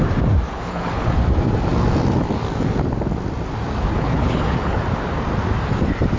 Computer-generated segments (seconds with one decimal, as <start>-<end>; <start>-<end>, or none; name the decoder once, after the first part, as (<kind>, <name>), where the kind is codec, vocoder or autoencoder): 0.5-1.2 (codec, HILCodec); 3.9-4.8